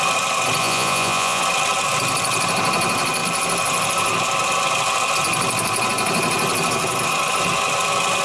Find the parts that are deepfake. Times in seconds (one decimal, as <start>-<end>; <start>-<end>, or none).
0.6-1.4